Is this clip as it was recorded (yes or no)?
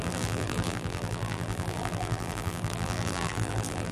no